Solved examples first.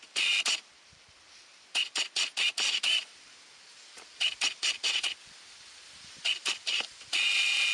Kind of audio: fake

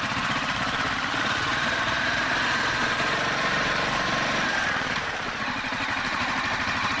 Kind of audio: fake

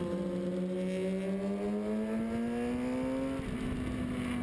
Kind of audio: real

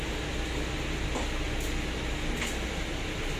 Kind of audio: real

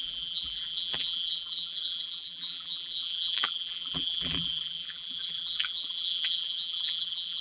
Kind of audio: fake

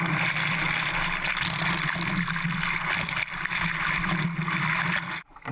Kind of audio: real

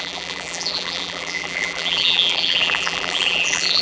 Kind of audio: fake